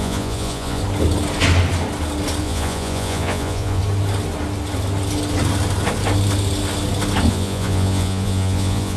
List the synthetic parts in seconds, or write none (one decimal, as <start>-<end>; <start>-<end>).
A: 0.0-0.8; 2.4-3.8; 7.3-9.0